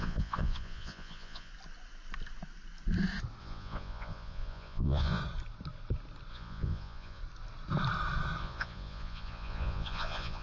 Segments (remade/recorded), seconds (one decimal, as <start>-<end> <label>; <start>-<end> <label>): 0.0-1.5 remade; 1.5-3.4 recorded; 3.4-5.2 remade; 5.2-6.3 recorded; 6.3-7.2 remade; 7.2-8.4 recorded; 8.4-10.4 remade